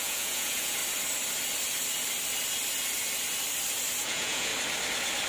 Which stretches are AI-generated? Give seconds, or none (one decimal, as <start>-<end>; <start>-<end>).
0.0-0.8; 4.0-4.5